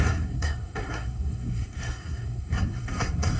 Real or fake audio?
fake